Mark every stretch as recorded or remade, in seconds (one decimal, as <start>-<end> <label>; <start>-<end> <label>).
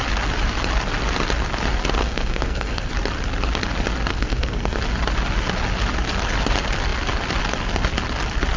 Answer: 0.0-2.0 recorded; 2.0-2.9 remade; 2.9-4.1 recorded; 4.1-4.8 remade; 4.8-8.6 recorded